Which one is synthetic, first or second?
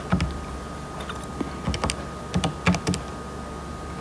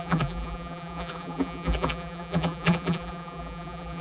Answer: second